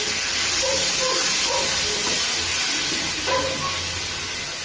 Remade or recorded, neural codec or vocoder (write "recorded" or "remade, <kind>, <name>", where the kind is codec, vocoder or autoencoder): recorded